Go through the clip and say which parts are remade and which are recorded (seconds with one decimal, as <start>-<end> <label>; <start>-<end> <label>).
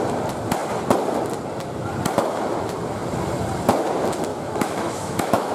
0.0-4.3 recorded; 4.3-5.5 remade